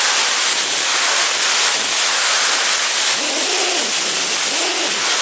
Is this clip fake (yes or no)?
no